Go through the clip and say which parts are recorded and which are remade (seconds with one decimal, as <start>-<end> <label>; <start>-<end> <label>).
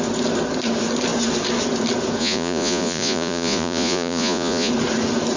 0.0-2.2 recorded; 2.2-4.7 remade; 4.7-5.4 recorded